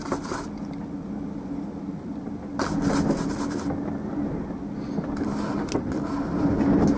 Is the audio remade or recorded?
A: recorded